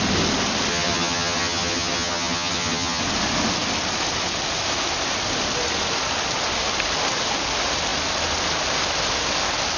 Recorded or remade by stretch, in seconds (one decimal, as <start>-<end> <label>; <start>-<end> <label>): 0.0-0.7 recorded; 0.7-3.0 remade; 3.0-9.8 recorded